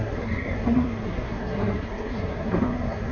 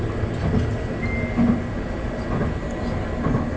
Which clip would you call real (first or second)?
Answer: second